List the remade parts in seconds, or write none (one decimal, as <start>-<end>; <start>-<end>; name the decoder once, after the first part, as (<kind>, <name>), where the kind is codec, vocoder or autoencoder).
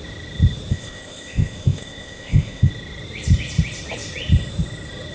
0.7-2.7 (codec, ZipCodec)